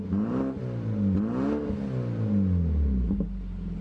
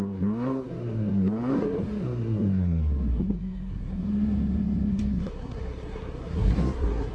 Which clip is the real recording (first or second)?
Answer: first